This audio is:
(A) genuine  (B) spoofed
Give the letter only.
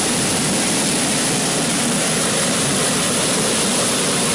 A